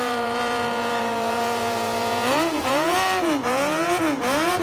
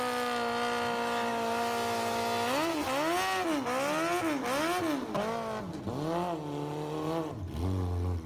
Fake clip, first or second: first